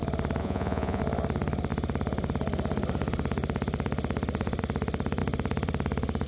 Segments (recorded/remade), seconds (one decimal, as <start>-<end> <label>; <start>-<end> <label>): 0.0-0.4 recorded; 0.4-1.0 remade; 1.0-6.3 recorded